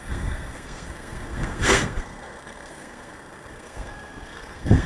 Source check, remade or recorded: remade